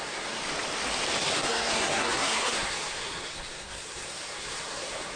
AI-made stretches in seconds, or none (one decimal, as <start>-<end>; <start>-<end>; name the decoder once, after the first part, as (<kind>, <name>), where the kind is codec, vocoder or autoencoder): 0.0-0.4 (codec, SNAC); 1.2-5.2